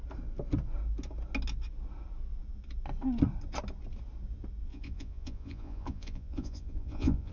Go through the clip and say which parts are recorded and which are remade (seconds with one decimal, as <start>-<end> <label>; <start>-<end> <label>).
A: 0.0-4.7 recorded; 4.7-7.3 remade